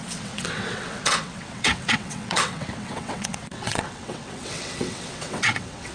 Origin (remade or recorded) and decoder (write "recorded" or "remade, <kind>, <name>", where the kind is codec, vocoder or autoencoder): remade, vocoder, WaveNeXt